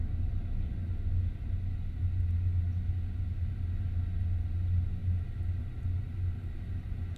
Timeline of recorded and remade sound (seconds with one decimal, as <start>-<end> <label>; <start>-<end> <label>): 0.0-7.2 recorded